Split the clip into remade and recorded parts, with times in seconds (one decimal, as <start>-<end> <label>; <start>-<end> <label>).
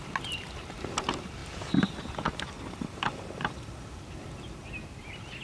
0.0-1.4 recorded; 1.4-3.8 remade; 3.8-5.4 recorded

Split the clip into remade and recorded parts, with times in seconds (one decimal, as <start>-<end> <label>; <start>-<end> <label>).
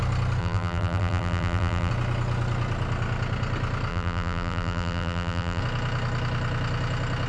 0.0-0.4 recorded; 0.4-1.9 remade; 1.9-3.9 recorded; 3.9-5.6 remade; 5.6-7.3 recorded